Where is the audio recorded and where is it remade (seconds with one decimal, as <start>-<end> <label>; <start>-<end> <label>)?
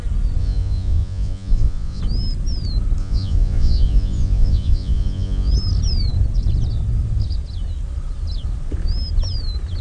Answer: 0.0-0.4 recorded; 0.4-2.0 remade; 2.0-3.0 recorded; 3.0-5.5 remade; 5.5-9.8 recorded